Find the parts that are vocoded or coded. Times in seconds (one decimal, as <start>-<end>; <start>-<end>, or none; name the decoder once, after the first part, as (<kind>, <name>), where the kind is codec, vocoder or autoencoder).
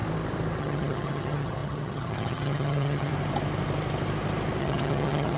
0.6-3.1 (vocoder, HiFi-GAN); 4.6-5.4